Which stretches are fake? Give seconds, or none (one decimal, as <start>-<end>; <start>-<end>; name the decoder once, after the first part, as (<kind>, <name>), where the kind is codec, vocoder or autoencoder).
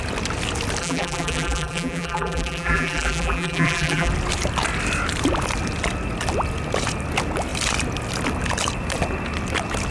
0.8-4.1 (vocoder, BigVGAN v2)